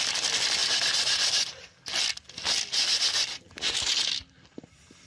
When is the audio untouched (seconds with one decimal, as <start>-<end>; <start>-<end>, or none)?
0.0-5.1